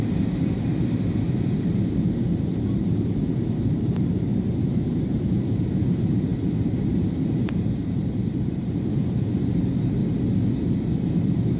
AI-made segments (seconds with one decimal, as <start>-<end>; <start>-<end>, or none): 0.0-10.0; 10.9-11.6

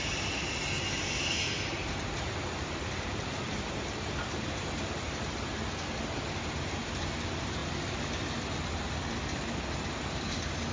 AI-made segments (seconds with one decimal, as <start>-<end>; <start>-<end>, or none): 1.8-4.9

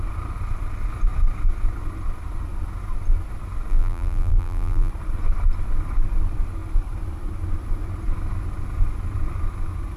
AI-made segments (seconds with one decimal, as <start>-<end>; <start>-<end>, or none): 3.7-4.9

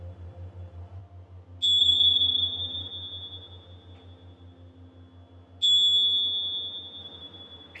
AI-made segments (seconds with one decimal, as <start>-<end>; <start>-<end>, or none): 0.0-1.0; 1.8-2.9; 7.0-7.8

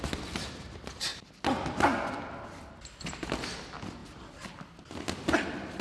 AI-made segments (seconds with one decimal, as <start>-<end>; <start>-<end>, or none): none

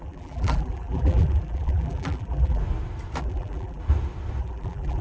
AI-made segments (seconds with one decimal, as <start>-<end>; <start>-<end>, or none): 0.0-2.6; 3.2-3.8; 4.4-5.0